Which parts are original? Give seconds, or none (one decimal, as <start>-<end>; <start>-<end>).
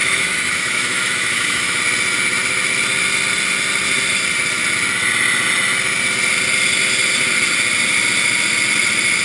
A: 1.8-9.2